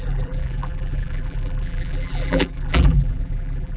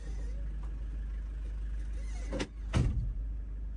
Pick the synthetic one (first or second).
first